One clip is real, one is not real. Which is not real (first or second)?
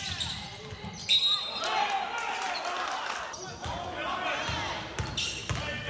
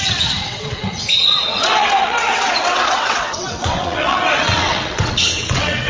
second